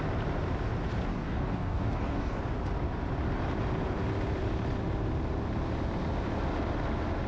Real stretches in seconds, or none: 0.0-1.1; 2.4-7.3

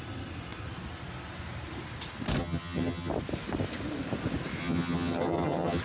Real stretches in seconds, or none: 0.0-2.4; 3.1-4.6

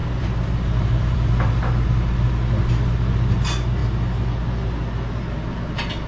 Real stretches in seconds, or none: 1.6-6.1